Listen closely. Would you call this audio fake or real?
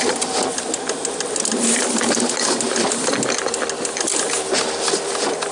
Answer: real